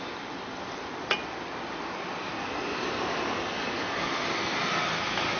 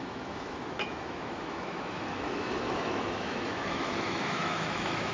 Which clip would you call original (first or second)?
first